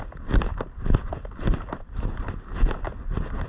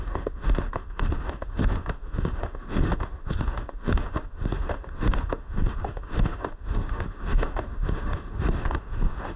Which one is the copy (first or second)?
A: second